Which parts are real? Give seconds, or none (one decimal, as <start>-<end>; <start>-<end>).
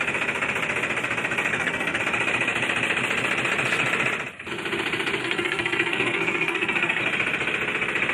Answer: 0.0-1.5; 2.0-5.2; 7.0-8.1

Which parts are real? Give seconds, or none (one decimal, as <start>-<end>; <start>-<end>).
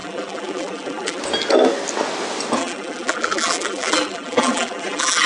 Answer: 1.2-2.6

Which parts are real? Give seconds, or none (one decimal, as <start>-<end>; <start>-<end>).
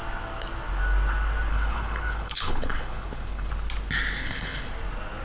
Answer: 0.0-1.5; 3.5-4.2; 4.7-5.2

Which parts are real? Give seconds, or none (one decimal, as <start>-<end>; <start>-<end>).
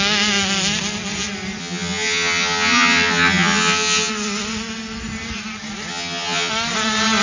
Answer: 0.0-1.6; 4.1-5.9; 6.5-7.2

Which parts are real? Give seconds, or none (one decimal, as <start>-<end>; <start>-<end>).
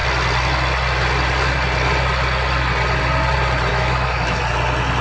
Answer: 0.0-3.7; 4.4-5.0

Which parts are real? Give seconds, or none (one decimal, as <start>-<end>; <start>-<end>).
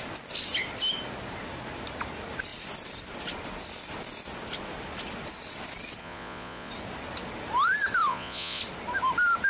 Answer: 0.0-6.0; 6.7-8.1; 8.6-9.5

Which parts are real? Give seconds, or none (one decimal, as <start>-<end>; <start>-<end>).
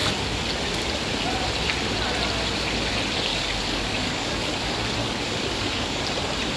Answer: 0.0-3.3; 4.5-5.0; 6.0-6.6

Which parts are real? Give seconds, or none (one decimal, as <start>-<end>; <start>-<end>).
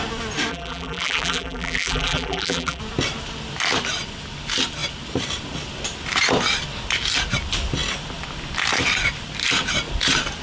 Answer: 0.0-0.5; 2.8-10.4